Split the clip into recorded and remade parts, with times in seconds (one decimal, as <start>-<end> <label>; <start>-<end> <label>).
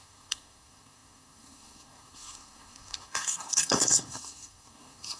0.0-5.2 remade